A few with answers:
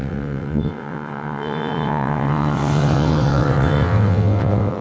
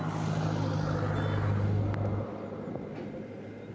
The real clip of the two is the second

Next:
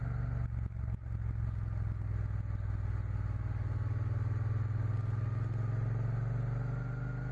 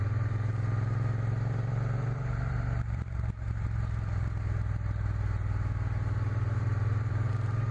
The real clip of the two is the first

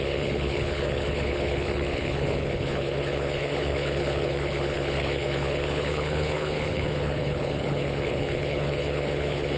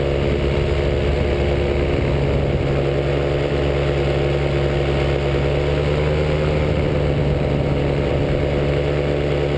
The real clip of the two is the second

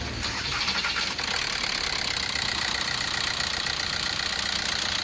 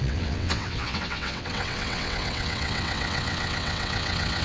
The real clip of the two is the first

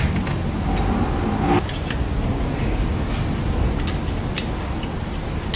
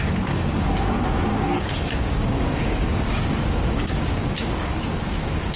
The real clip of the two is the first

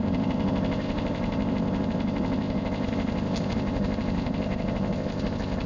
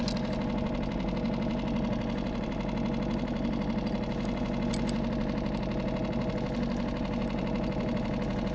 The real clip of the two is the second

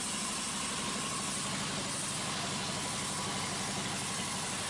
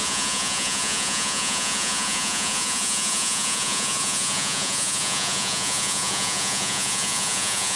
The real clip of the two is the first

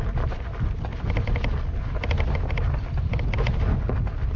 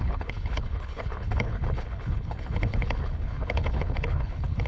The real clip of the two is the first